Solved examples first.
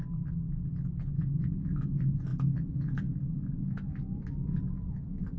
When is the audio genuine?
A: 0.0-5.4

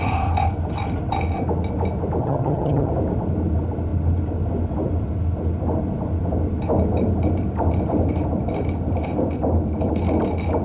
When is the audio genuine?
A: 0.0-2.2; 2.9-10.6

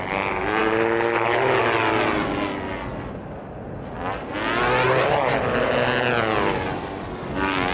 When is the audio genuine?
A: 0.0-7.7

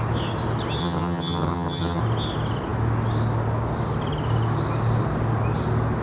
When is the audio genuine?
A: 0.0-0.8; 2.0-6.0

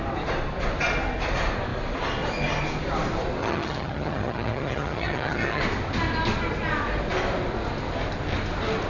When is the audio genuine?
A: 0.0-3.4; 5.6-8.9

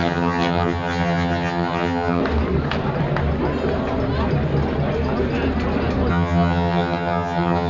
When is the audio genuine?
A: 2.2-6.1

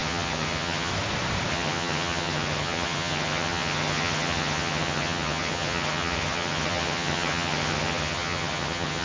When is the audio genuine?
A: 0.9-1.5